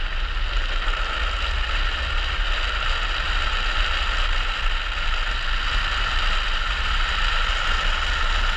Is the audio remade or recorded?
recorded